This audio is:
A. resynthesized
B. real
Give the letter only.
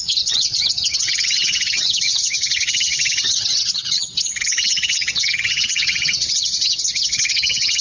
A